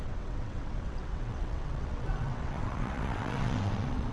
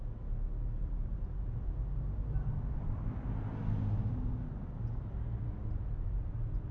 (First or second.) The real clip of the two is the second